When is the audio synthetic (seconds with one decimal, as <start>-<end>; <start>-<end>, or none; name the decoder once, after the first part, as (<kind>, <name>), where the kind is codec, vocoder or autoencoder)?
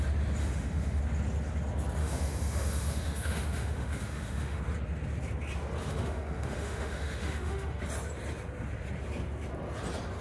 0.4-1.0 (autoencoder, DAC-VAE); 2.0-4.6; 5.8-7.8